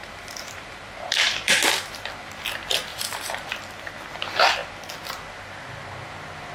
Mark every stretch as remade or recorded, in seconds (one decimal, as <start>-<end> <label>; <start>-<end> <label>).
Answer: 0.0-2.1 remade; 2.1-2.9 recorded; 2.9-3.6 remade; 3.6-6.5 recorded